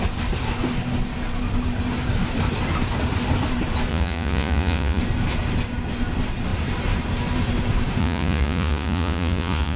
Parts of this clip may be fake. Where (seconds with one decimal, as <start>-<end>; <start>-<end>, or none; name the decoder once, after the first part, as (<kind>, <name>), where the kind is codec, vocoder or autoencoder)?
3.9-5.0 (vocoder, Vocos); 8.0-9.8